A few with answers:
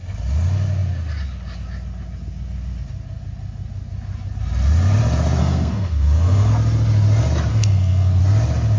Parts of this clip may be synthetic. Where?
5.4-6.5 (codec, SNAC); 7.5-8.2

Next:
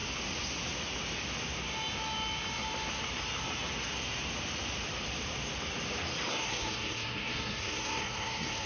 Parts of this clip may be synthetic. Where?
6.3-8.7 (codec, SNAC)

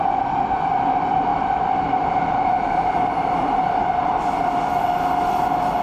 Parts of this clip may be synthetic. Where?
none

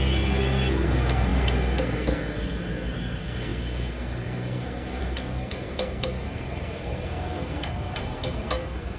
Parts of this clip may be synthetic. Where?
0.0-9.0 (codec, SNAC)

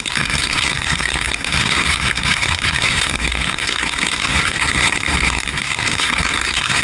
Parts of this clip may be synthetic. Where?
0.0-6.8 (codec, SNAC)